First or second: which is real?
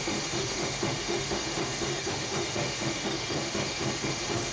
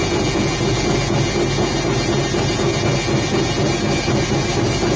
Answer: second